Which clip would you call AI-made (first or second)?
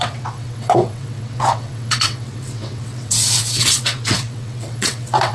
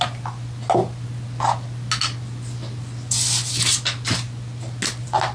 first